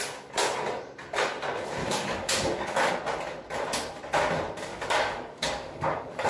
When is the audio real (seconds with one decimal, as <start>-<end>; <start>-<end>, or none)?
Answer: 0.0-1.8; 2.9-4.7